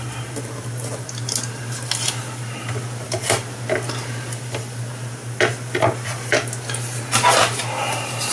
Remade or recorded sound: recorded